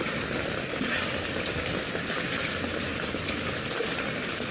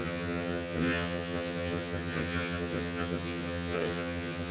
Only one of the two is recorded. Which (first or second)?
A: first